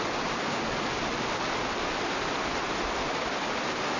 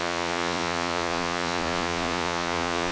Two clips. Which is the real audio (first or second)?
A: first